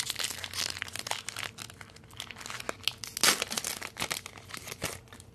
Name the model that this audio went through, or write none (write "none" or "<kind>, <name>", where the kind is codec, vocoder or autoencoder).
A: none